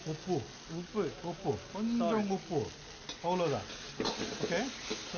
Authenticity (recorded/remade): recorded